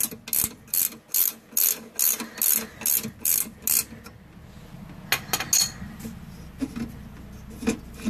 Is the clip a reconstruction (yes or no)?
no